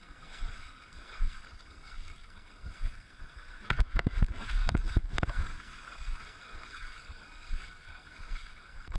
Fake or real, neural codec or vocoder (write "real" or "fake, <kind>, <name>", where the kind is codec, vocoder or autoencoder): fake, codec, SNAC